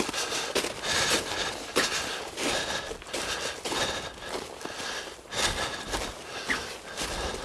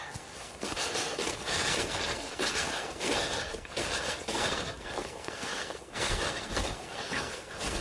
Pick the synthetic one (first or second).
second